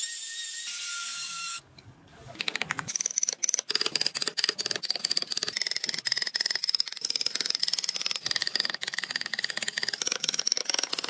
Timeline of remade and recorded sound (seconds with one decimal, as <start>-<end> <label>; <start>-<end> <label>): 0.0-0.9 recorded; 0.9-3.1 remade; 3.1-8.4 recorded; 8.4-10.4 remade; 10.4-11.1 recorded